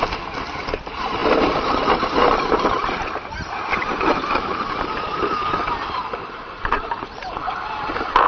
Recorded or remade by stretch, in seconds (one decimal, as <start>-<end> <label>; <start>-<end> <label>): 0.0-3.8 recorded; 3.8-4.9 remade; 4.9-6.2 recorded; 6.2-7.9 remade; 7.9-8.3 recorded